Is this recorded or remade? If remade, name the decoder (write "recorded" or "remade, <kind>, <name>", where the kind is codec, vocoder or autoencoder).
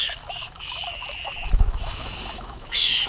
remade, autoencoder, DAC-VAE